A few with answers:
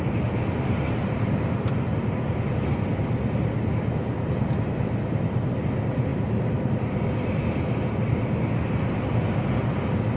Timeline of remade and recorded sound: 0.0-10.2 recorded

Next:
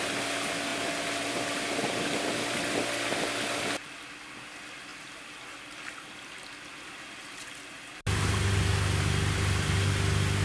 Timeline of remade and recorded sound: 0.0-10.4 recorded

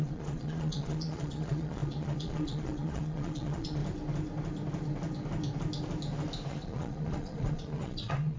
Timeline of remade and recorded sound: 0.0-3.8 remade; 3.8-6.5 recorded; 6.5-8.4 remade

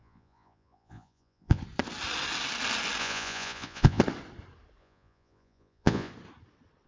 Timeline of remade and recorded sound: 0.0-1.6 remade; 1.6-3.0 recorded; 3.0-4.0 remade; 4.0-4.8 recorded; 4.8-6.1 remade; 6.1-6.9 recorded

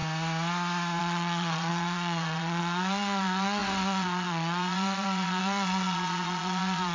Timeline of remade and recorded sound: 0.0-1.0 recorded; 1.0-6.9 remade

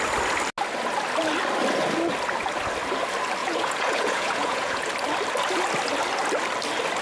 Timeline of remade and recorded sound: 0.0-3.4 recorded; 3.4-4.9 remade; 4.9-7.0 recorded

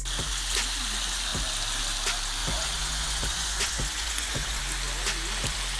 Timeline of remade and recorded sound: 0.0-2.4 recorded; 2.4-4.6 remade; 4.6-5.8 recorded

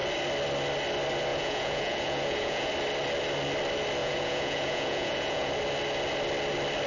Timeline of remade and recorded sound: 0.0-1.3 recorded; 1.3-2.7 remade; 2.7-4.0 recorded; 4.0-5.5 remade; 5.5-6.9 recorded